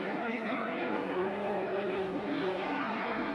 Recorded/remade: remade